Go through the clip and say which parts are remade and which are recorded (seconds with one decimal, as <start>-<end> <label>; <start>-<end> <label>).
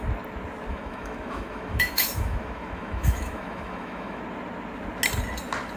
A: 0.0-0.7 recorded; 0.7-4.2 remade; 4.2-5.8 recorded